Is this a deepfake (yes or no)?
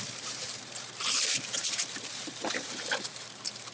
yes